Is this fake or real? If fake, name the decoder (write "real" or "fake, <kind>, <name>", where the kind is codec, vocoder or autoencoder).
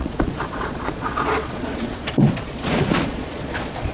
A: fake, vocoder, Vocos